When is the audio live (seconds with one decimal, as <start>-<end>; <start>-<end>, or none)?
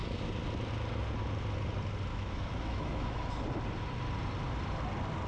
0.0-2.1; 3.3-5.3